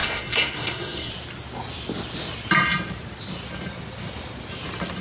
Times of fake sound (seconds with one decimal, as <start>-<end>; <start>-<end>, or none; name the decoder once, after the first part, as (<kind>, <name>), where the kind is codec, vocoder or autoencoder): 0.0-1.1 (codec, SNAC)